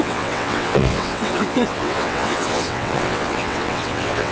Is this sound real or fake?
fake